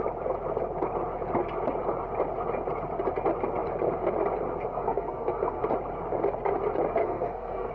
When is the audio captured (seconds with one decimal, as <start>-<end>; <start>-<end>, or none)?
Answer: 0.0-4.7; 5.6-7.0